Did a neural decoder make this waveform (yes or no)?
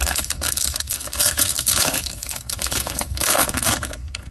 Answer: yes